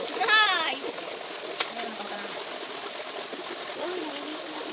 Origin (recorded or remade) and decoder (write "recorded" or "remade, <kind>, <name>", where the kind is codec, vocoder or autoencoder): recorded